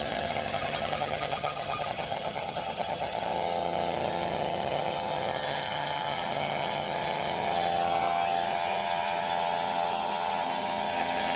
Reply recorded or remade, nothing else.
remade